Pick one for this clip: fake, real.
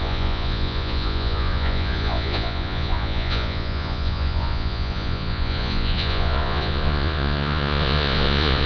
fake